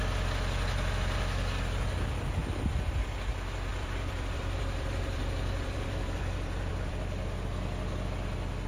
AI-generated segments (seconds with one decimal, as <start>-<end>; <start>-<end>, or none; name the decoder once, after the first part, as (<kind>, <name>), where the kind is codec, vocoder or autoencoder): 2.4-2.9 (vocoder, BigVGAN v2); 3.7-6.9